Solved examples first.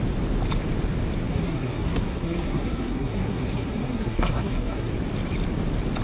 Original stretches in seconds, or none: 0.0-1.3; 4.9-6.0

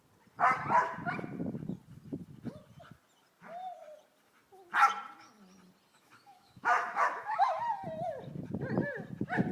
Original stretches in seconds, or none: 0.0-5.9; 7.6-9.5